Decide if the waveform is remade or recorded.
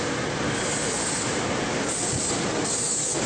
recorded